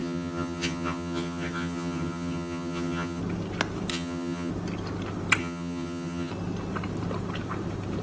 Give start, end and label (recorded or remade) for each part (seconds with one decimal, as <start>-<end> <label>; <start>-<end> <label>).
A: 0.0-3.2 remade; 3.2-3.9 recorded; 3.9-4.5 remade; 4.5-5.4 recorded; 5.4-6.3 remade; 6.3-8.0 recorded